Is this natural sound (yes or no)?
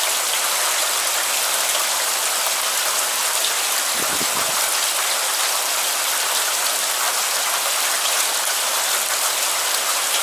yes